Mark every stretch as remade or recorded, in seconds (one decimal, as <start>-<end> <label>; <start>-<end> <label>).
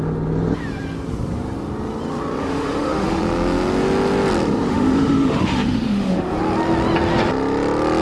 0.0-2.4 recorded; 2.4-3.2 remade; 3.2-4.7 recorded; 4.7-6.4 remade; 6.4-8.0 recorded